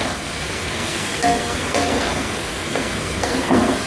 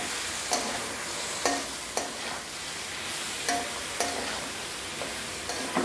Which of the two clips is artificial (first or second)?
first